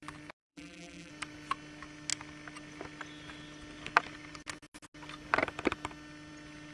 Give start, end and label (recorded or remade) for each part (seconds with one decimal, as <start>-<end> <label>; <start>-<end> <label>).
0.0-0.4 recorded; 0.4-1.1 remade; 1.1-6.7 recorded